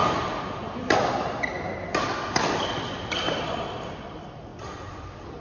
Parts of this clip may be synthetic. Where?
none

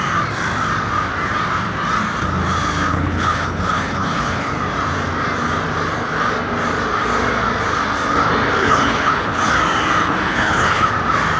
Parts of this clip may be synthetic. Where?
2.9-4.5 (codec, HILCodec); 8.6-9.5; 10.0-10.9

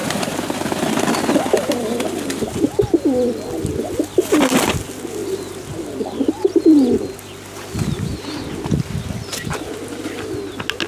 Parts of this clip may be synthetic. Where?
0.0-3.9 (vocoder, BigVGAN v2); 5.2-6.3